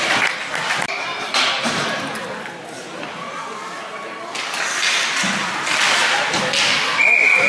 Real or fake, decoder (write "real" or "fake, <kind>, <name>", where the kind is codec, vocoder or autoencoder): real